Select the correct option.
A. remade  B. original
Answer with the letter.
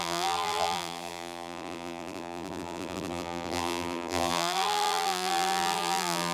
A